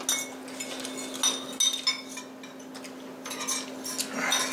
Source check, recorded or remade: recorded